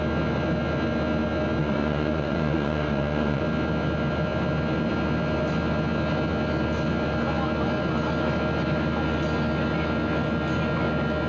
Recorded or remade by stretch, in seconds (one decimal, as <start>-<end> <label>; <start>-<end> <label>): 0.0-1.6 recorded; 1.6-3.4 remade; 3.4-11.3 recorded